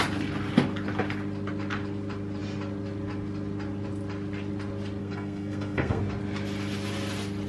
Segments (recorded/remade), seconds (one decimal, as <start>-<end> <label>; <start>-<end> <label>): 0.0-5.0 recorded; 5.0-6.0 remade; 6.0-7.5 recorded